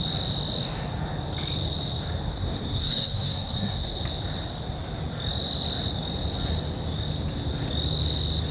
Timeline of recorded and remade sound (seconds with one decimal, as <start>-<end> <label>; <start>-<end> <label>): 0.0-2.3 recorded; 2.3-4.0 remade; 4.0-8.5 recorded